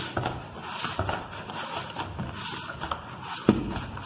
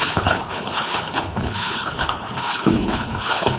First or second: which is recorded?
first